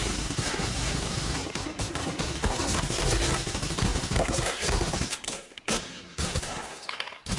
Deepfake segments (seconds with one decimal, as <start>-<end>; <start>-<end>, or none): 0.0-7.4